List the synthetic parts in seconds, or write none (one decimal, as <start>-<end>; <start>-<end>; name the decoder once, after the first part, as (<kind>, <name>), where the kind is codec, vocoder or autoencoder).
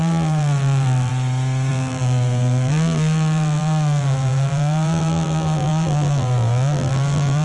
0.0-1.1 (vocoder, BigVGAN v2); 1.7-7.4